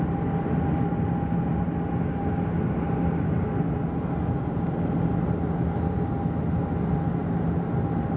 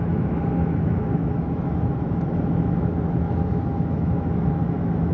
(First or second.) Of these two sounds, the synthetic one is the second